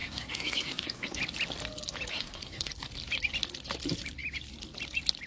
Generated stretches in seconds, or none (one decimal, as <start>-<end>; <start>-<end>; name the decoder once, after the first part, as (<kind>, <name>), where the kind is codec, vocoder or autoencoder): 0.0-1.2 (codec, SNAC); 2.1-2.7

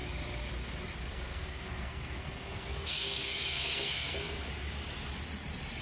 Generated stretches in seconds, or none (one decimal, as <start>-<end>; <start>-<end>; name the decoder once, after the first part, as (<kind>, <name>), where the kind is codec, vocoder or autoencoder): 1.1-4.4 (codec, SNAC)

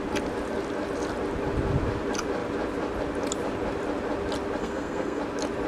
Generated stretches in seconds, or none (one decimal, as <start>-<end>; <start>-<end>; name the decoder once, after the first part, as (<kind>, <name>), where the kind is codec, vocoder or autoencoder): 4.6-5.2 (codec, SNAC)

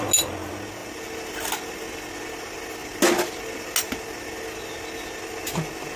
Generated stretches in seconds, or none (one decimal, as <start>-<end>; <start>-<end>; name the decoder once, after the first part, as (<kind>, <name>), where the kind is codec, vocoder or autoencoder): none

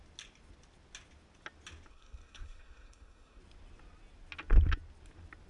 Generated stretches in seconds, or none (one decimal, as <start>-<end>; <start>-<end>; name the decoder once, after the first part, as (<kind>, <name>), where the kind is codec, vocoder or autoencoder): 1.9-3.4 (codec, SNAC)